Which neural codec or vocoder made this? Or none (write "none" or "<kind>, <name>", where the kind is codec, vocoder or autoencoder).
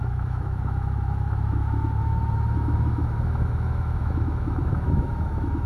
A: autoencoder, DAC-VAE